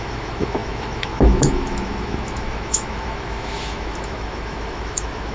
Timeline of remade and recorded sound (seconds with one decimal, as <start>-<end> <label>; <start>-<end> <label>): 0.0-5.3 remade